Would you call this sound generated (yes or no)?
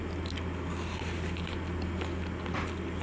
no